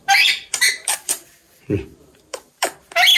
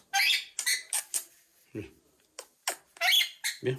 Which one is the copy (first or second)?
first